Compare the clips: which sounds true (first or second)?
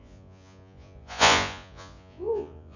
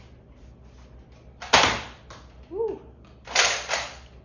second